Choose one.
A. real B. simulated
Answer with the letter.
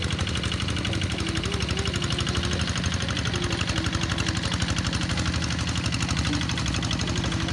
A